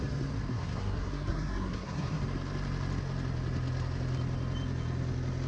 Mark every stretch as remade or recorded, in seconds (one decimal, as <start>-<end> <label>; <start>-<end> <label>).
0.0-0.5 recorded; 0.5-2.2 remade; 2.2-5.5 recorded